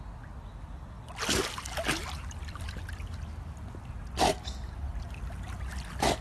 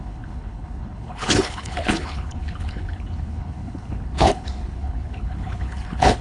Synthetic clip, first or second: second